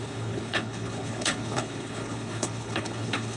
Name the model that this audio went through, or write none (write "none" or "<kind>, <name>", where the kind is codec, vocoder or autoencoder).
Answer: codec, HILCodec